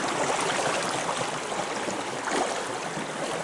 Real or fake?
real